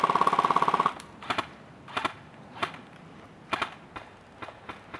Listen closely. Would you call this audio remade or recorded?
recorded